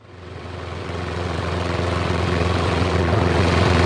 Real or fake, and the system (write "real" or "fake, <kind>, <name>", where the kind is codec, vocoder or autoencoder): fake, vocoder, WaveNeXt